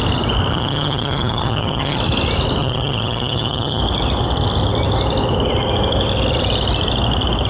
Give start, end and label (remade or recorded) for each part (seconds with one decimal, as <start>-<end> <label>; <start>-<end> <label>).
0.0-0.5 recorded; 0.5-2.0 remade; 2.0-2.6 recorded; 2.6-3.8 remade; 3.8-7.5 recorded